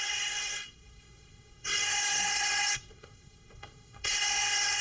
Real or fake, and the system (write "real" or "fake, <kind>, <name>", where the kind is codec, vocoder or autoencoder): fake, codec, SNAC